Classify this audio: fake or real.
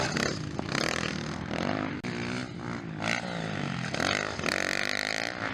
real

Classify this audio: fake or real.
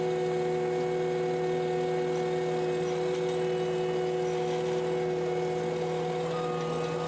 real